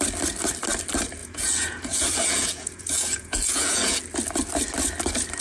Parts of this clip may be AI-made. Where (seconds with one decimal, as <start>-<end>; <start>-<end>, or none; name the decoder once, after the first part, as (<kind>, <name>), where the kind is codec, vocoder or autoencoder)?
1.2-4.0 (vocoder, Vocos)

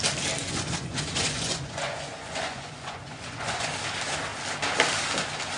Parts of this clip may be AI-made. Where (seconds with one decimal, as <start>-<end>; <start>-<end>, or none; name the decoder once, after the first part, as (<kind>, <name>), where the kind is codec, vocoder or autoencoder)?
0.4-3.7 (vocoder, Vocos)

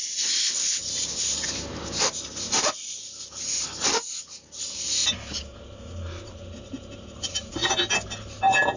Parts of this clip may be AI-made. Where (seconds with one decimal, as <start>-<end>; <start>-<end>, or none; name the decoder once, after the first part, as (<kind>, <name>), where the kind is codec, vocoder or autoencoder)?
0.0-5.0 (vocoder, BigVGAN v2); 5.6-7.6; 8.4-8.8

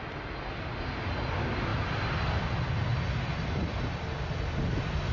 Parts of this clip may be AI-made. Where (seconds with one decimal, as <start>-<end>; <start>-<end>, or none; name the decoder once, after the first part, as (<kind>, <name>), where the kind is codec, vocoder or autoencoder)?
none